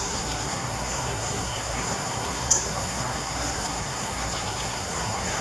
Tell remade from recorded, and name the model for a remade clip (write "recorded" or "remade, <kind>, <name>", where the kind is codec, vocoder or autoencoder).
remade, codec, SNAC